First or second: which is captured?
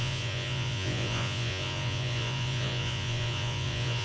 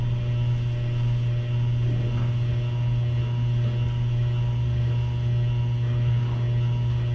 second